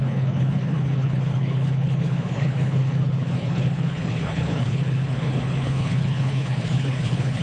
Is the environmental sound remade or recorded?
remade